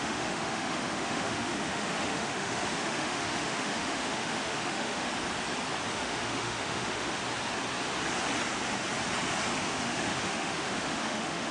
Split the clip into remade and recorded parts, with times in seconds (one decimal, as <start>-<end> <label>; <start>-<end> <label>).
0.0-5.1 remade; 5.1-5.9 recorded; 5.9-7.2 remade; 7.2-9.5 recorded; 9.5-11.5 remade